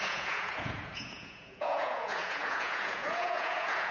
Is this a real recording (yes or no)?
no